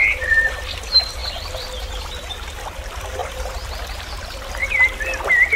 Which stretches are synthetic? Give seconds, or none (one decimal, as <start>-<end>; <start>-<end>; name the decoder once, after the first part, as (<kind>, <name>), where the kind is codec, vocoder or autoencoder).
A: 1.2-2.3 (vocoder, BigVGAN v2); 3.2-3.7